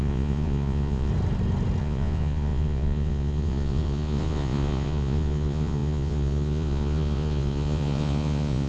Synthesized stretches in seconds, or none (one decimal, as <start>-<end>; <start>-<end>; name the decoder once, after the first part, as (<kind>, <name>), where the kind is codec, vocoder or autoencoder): 0.0-1.1 (vocoder, Vocos); 1.8-8.7